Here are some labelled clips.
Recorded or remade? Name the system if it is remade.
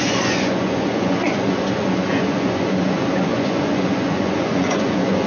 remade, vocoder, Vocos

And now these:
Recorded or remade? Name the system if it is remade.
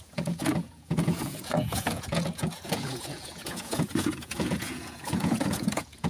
remade, vocoder, Vocos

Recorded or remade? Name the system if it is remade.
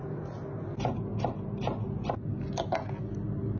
recorded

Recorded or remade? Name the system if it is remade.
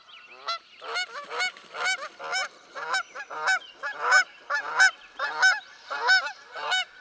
recorded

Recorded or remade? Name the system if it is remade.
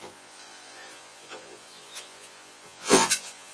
remade, vocoder, Vocos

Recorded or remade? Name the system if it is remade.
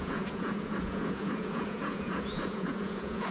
remade, vocoder, Vocos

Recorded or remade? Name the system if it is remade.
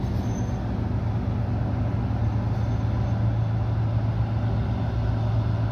recorded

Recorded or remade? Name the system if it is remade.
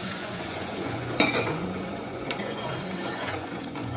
remade, vocoder, Vocos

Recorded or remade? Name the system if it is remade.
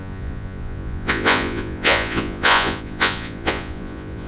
remade, vocoder, Vocos